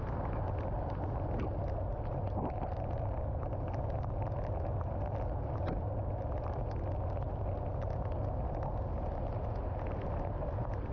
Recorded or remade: recorded